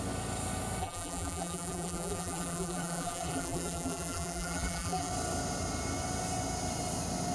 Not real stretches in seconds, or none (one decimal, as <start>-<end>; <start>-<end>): 0.8-5.1